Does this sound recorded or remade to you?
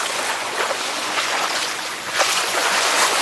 remade